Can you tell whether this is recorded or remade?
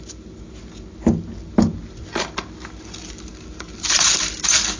recorded